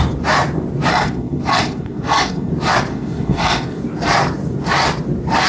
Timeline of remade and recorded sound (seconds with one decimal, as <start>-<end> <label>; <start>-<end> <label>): 0.0-0.9 recorded; 0.9-2.5 remade; 2.5-2.9 recorded; 2.9-3.8 remade; 3.8-5.5 recorded